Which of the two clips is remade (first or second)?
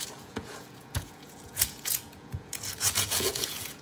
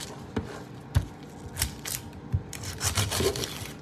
first